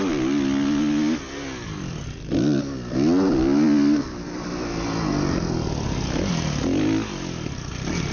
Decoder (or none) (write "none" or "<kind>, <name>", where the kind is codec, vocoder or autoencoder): none